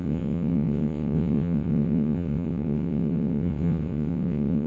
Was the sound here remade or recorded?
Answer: remade